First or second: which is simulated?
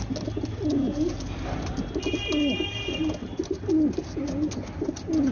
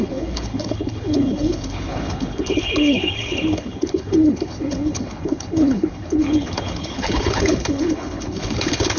second